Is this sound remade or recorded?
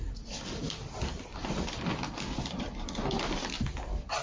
remade